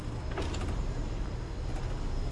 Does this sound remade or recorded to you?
recorded